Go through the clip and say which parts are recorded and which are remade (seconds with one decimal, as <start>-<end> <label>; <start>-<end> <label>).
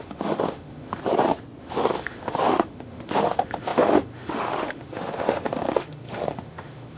0.0-1.0 remade; 1.0-1.6 recorded; 1.6-7.0 remade